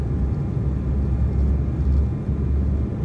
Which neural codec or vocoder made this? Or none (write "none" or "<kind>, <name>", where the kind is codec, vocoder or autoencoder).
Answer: none